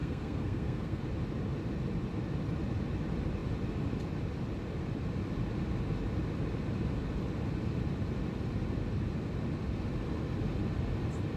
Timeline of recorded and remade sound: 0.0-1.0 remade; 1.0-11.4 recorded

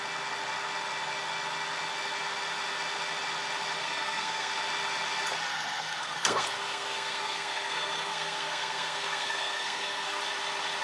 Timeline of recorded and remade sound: 0.0-3.8 recorded; 3.8-4.5 remade; 4.5-5.5 recorded; 5.5-10.2 remade; 10.2-10.8 recorded